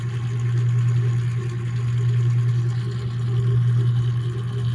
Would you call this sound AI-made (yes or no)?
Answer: no